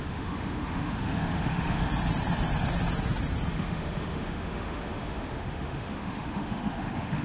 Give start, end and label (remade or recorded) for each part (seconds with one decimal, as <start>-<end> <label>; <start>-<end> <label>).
0.0-1.9 remade; 1.9-3.5 recorded; 3.5-7.2 remade